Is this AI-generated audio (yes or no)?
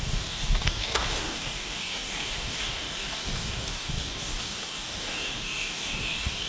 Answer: yes